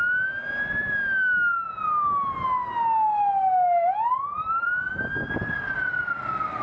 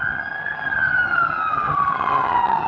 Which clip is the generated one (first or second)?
second